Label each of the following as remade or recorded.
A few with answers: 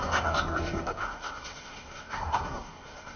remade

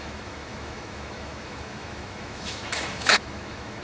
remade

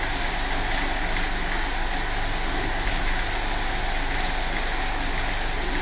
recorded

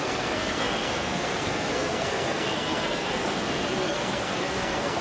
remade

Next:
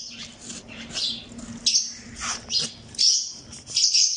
recorded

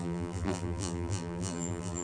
remade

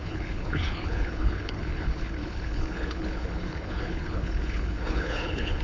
remade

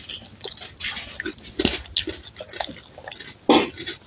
recorded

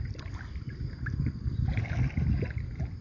recorded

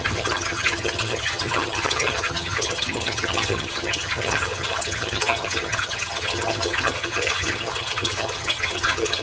remade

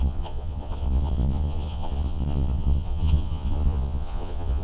remade